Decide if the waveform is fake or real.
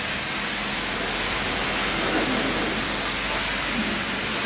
real